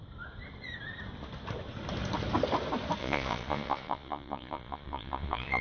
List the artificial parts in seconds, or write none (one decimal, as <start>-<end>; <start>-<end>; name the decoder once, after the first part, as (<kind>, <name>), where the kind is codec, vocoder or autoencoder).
3.0-5.6 (vocoder, Vocos)